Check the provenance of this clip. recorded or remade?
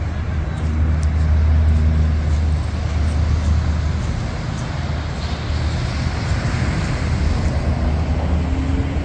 recorded